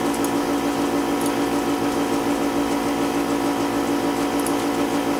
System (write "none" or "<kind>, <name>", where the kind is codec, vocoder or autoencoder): none